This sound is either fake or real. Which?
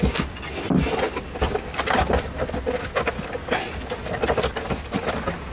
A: real